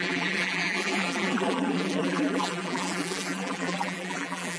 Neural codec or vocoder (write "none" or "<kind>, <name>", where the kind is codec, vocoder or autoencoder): vocoder, BigVGAN v2